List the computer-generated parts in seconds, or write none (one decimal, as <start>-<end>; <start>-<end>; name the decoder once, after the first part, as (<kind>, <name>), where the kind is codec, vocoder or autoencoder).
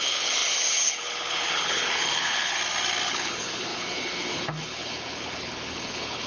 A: 0.0-2.6 (codec, HILCodec); 3.1-6.3